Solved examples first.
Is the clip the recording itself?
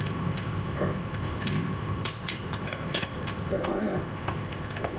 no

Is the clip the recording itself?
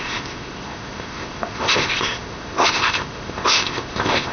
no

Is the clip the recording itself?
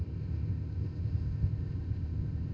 no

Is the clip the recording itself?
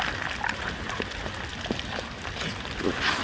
yes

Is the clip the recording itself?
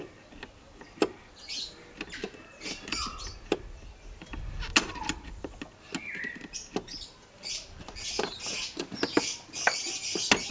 yes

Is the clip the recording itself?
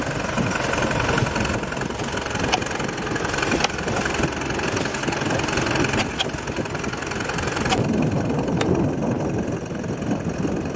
yes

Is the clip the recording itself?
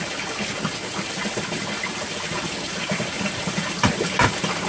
yes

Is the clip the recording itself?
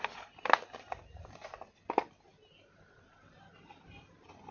yes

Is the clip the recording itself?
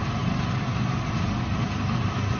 yes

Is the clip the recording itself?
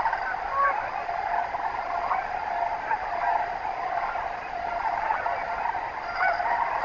yes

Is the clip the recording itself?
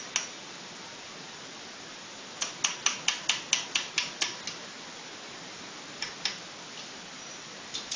yes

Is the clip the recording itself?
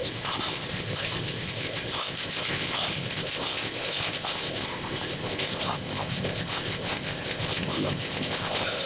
no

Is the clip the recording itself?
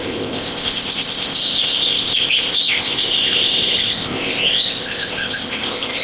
no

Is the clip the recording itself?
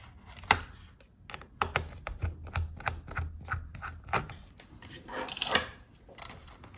yes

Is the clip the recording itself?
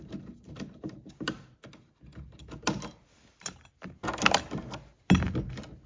yes